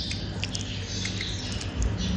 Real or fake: real